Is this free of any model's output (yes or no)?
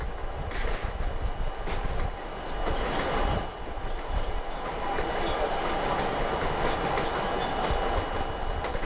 yes